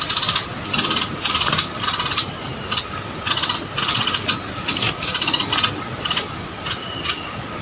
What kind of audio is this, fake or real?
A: real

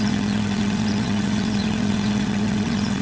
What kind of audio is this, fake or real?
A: fake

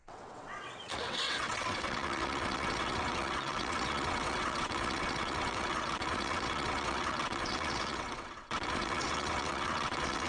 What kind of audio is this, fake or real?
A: fake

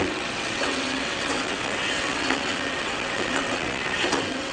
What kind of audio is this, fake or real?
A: fake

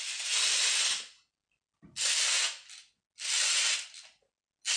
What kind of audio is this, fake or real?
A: real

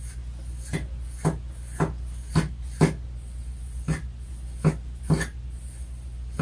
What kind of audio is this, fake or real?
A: real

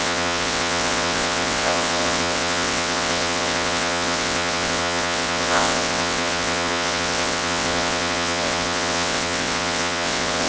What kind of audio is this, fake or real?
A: fake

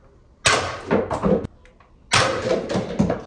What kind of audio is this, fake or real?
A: real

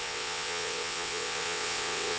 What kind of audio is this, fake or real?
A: fake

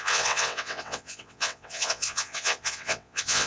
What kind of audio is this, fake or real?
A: fake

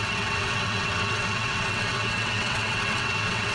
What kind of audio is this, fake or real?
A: fake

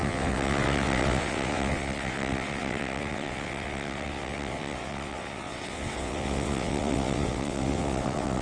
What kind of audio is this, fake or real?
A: fake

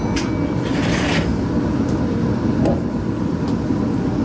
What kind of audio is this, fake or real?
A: real